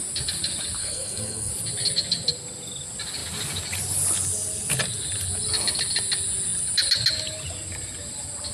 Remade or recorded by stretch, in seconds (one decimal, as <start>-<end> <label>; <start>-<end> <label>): 0.0-0.8 recorded; 0.8-1.5 remade; 1.5-8.5 recorded